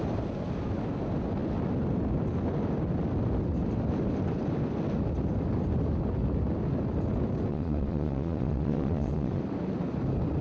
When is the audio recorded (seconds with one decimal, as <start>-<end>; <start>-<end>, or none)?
0.0-7.5; 9.4-10.4